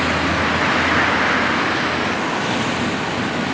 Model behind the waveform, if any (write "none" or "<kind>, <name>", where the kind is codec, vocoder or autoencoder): none